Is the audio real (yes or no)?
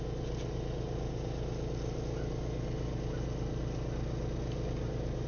yes